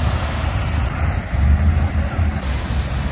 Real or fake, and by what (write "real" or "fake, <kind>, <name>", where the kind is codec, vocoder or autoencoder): real